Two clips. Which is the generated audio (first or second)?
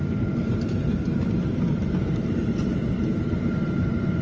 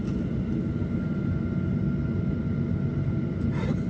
first